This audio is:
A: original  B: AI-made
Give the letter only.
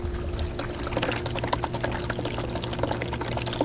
A